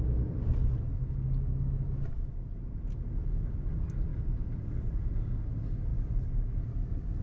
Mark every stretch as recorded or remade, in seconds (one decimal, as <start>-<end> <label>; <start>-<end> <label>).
0.0-4.1 recorded; 4.1-4.9 remade; 4.9-5.9 recorded; 5.9-6.5 remade; 6.5-7.2 recorded